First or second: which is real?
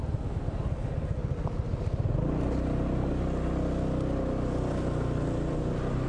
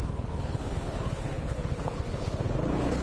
first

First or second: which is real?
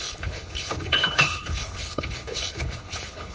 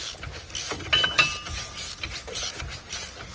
second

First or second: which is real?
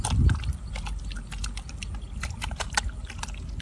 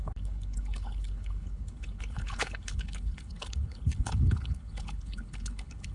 first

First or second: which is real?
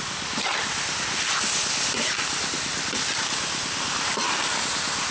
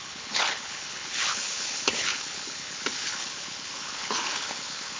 first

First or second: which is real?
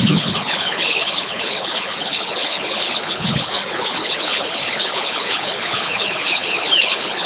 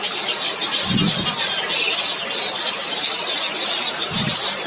second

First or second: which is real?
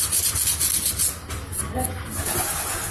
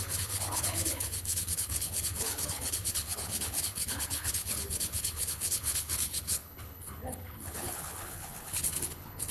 first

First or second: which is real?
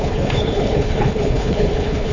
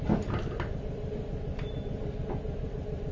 second